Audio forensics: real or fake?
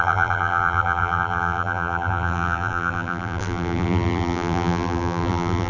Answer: fake